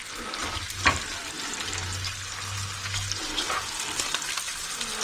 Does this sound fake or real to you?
real